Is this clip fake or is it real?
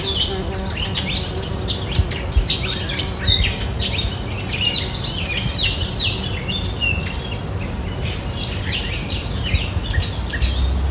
real